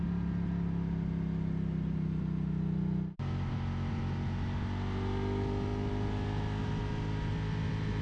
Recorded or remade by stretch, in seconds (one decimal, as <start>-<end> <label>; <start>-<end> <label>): 0.0-8.0 recorded